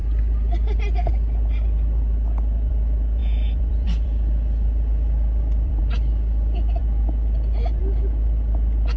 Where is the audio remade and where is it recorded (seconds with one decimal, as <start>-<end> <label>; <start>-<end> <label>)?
0.0-3.2 recorded; 3.2-5.8 remade; 5.8-9.0 recorded